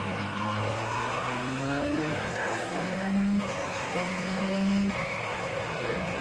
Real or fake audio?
fake